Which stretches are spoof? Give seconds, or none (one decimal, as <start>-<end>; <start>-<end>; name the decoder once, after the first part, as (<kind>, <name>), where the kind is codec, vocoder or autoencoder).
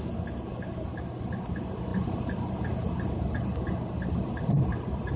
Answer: 1.9-5.2 (vocoder, BigVGAN v2)